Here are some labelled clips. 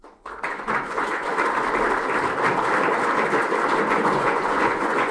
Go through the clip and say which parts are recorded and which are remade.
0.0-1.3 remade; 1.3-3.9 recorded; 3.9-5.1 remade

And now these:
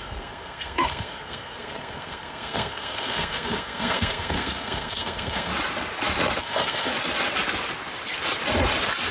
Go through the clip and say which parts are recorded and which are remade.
0.0-5.5 remade; 5.5-6.4 recorded; 6.4-6.9 remade; 6.9-9.1 recorded

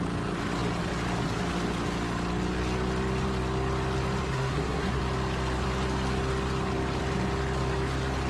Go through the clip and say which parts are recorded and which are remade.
0.0-4.2 recorded; 4.2-5.0 remade; 5.0-8.3 recorded